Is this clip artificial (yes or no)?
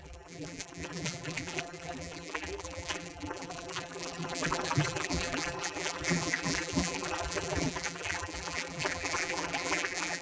yes